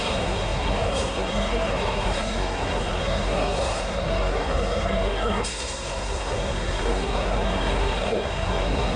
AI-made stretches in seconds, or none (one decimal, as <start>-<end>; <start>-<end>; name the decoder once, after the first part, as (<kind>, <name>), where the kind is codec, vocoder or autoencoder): 0.0-9.0 (codec, SNAC)